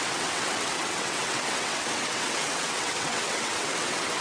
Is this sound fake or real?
fake